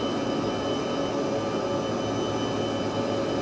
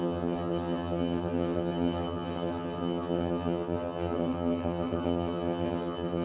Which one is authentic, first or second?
first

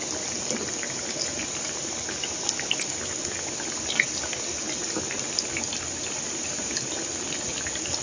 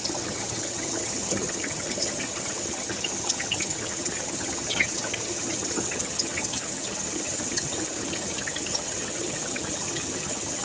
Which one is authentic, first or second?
first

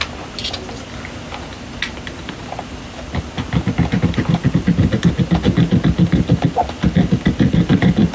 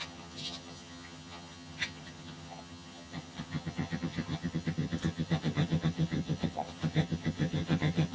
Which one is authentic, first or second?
first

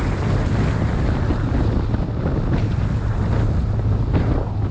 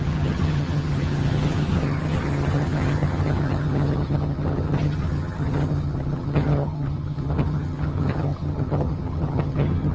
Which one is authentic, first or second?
first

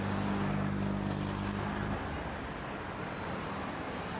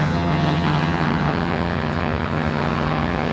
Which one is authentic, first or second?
first